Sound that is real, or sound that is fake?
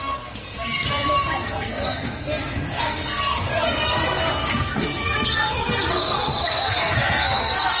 fake